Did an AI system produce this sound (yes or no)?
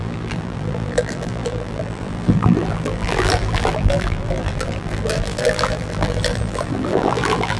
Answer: yes